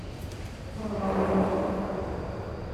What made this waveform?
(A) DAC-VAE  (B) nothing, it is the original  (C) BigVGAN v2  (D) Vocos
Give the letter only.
C